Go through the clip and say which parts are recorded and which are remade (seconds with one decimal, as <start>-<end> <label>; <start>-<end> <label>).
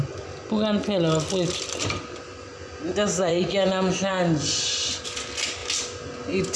0.0-3.3 recorded; 3.3-4.1 remade; 4.1-6.6 recorded